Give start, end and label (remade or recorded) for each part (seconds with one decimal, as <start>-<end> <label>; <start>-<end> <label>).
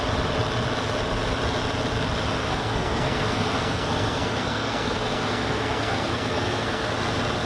0.0-2.4 recorded; 2.4-6.9 remade; 6.9-7.5 recorded